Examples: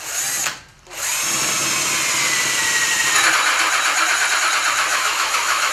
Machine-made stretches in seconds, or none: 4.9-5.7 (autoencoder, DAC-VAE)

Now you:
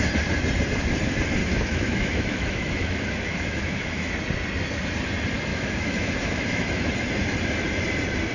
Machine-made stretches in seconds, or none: 1.4-4.1 (autoencoder, DAC-VAE); 5.5-6.9

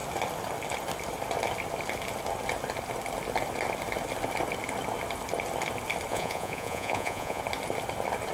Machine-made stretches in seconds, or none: 6.1-7.4 (vocoder, Vocos)

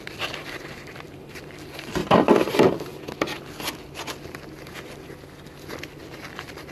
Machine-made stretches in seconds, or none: 0.0-2.0 (vocoder, BigVGAN v2); 2.5-2.9; 5.9-6.7

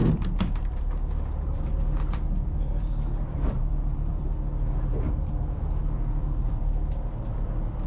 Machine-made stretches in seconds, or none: 0.0-7.9 (vocoder, BigVGAN v2)

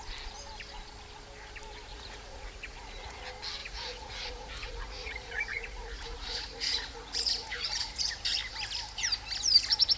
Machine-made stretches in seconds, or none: 1.9-3.2 (vocoder, Vocos); 3.6-8.1

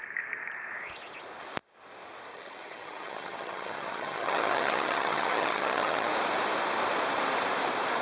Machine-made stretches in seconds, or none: 2.3-6.1 (vocoder, HiFi-GAN)